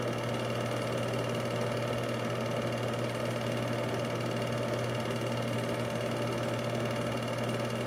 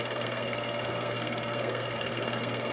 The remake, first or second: second